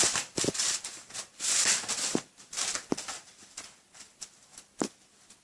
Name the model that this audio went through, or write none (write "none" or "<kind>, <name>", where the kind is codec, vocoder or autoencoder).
none